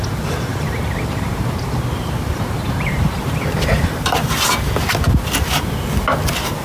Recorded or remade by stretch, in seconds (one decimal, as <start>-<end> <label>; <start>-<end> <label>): 0.0-0.5 recorded; 0.5-4.5 remade; 4.5-6.6 recorded